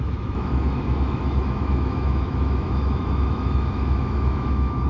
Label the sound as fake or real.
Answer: fake